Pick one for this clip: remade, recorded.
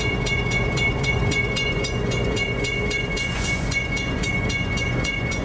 remade